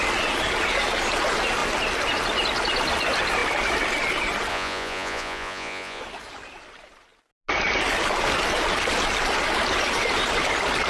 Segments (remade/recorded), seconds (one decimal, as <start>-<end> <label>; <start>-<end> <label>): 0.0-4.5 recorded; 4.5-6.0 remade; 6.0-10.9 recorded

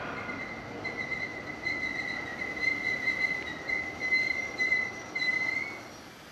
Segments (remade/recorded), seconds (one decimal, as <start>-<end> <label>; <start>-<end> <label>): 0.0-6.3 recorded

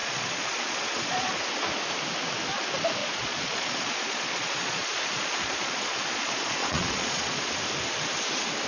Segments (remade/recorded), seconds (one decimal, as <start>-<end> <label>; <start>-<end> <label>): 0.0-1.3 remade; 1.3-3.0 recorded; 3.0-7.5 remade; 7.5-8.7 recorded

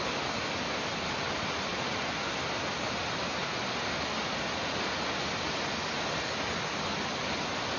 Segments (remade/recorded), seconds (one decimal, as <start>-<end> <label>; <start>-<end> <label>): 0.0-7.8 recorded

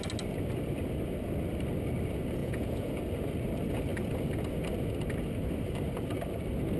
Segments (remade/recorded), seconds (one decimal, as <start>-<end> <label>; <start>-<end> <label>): 0.0-2.4 recorded; 2.4-2.9 remade; 2.9-6.8 recorded

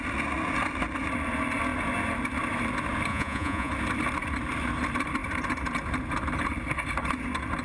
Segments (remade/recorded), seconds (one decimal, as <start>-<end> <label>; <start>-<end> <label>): 0.0-3.1 recorded; 3.1-3.7 remade; 3.7-7.6 recorded

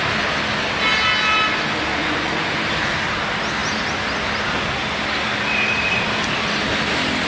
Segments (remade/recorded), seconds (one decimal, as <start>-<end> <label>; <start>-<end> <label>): 0.0-1.9 recorded; 1.9-2.5 remade; 2.5-7.3 recorded